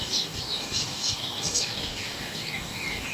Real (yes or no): no